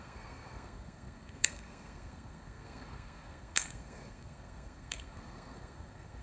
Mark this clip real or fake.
fake